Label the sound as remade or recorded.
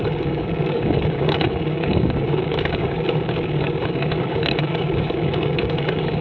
remade